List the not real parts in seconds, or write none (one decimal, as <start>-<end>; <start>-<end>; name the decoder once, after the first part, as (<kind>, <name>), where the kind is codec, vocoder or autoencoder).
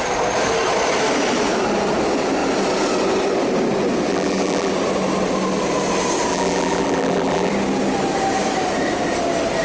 4.1-4.7 (vocoder, BigVGAN v2); 6.3-7.5